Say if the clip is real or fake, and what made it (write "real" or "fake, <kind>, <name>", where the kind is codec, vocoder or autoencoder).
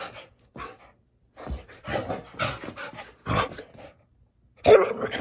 real